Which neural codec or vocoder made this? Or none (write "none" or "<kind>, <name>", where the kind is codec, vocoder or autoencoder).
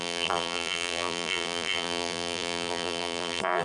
vocoder, BigVGAN v2